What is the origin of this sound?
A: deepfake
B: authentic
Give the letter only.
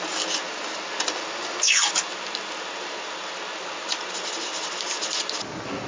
B